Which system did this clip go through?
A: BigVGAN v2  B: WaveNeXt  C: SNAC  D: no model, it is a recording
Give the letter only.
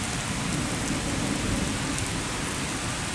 D